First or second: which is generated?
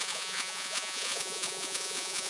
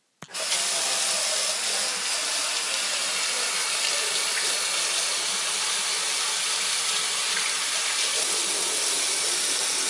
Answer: first